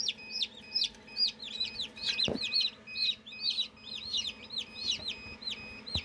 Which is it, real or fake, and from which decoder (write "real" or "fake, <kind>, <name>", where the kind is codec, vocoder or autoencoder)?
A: real